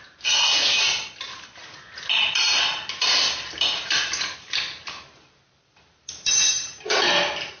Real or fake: real